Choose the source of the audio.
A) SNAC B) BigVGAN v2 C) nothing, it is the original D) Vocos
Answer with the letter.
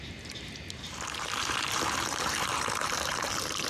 B